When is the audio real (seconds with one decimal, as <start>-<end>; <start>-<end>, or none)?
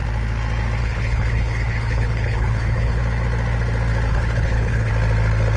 0.0-0.8; 3.0-4.1; 4.9-5.6